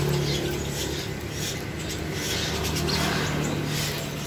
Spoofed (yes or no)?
no